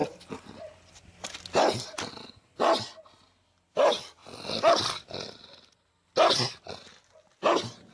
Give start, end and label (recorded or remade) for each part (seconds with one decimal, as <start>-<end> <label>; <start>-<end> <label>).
0.0-7.9 recorded